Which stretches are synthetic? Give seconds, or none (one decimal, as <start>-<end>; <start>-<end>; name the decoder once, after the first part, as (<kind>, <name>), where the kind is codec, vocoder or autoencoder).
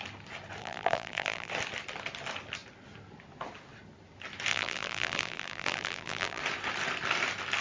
0.6-1.5 (vocoder, BigVGAN v2); 4.5-6.4